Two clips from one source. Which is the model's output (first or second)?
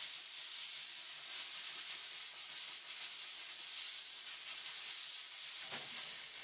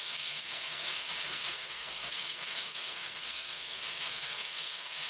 second